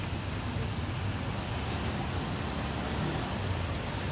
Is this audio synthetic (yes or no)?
no